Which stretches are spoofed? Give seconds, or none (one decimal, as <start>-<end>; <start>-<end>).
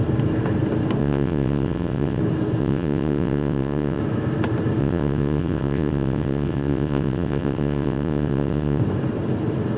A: 1.0-2.2; 2.6-4.0; 4.8-8.8